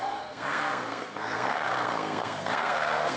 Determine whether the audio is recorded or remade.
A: remade